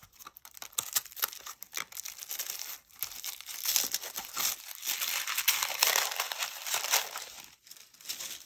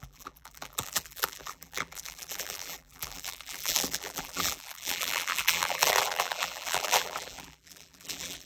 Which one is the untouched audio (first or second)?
first